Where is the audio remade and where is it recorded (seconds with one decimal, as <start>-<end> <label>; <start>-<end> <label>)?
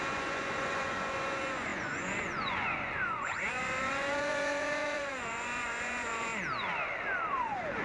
0.0-6.3 remade; 6.3-7.3 recorded; 7.3-7.8 remade